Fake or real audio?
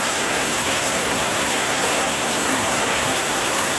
fake